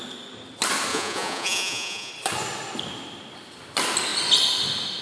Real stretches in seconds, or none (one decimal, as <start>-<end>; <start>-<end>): 0.0-0.9; 2.1-5.0